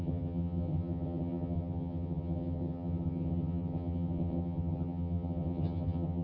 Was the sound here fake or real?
fake